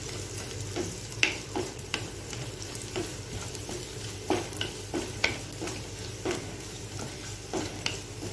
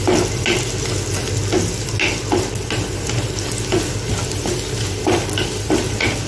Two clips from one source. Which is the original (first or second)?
second